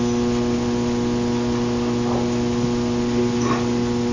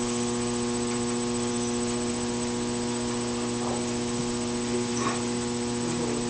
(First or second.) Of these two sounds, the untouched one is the first